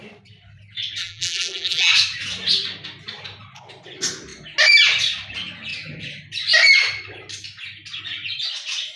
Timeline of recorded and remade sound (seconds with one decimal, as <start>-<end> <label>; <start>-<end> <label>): 0.0-1.0 recorded; 1.0-1.9 remade; 1.9-9.0 recorded